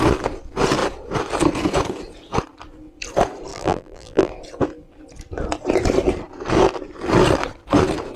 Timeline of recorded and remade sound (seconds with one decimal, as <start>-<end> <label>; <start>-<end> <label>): 0.0-3.5 recorded; 3.5-4.3 remade; 4.3-8.2 recorded